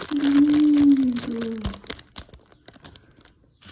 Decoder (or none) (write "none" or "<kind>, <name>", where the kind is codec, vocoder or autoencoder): none